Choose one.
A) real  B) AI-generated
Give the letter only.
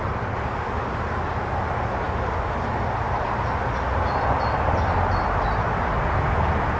A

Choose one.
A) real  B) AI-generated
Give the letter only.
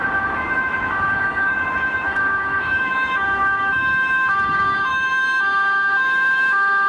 B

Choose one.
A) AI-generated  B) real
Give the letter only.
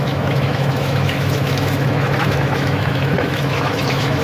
A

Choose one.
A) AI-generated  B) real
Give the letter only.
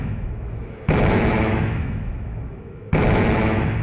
A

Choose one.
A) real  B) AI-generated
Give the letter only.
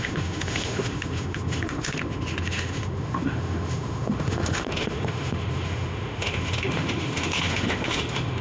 B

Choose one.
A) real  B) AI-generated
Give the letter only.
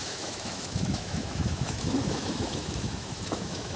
B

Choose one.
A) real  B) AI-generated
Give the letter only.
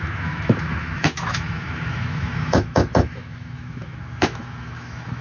B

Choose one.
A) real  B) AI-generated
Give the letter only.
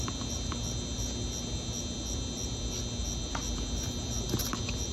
A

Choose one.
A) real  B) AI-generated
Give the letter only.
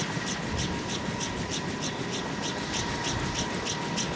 A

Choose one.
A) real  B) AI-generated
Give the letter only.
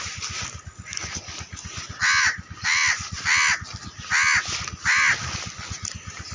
A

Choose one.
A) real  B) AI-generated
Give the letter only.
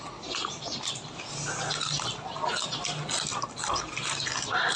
A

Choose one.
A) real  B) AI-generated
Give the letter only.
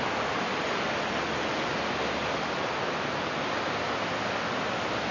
A